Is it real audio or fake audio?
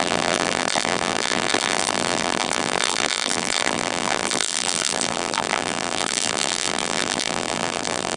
fake